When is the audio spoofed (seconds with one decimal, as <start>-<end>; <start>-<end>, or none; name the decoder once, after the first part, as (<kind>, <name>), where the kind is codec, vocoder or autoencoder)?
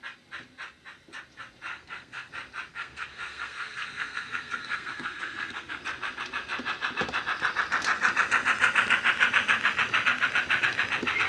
1.7-2.3 (codec, SNAC); 2.7-5.8